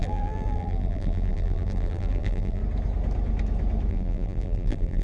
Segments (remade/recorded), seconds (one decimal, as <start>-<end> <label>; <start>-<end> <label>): 0.0-2.6 remade; 2.6-3.9 recorded; 3.9-5.0 remade